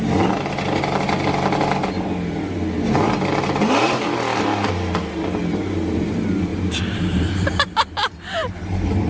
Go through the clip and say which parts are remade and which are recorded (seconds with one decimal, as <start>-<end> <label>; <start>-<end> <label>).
0.0-6.5 recorded; 6.5-8.5 remade; 8.5-9.1 recorded